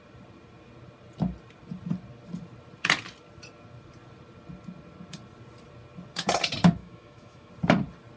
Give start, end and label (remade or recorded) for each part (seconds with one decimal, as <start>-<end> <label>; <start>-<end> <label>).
0.0-6.8 recorded; 6.8-7.5 remade; 7.5-8.2 recorded